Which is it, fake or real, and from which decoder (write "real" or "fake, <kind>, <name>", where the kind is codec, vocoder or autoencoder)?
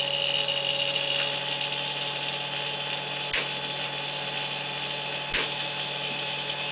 real